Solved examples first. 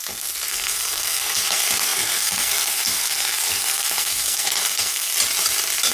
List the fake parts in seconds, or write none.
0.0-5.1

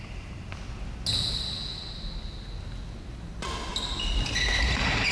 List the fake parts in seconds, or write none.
none